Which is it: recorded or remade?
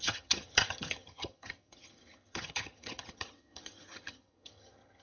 remade